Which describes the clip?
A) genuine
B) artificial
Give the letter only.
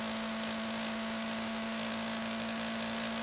A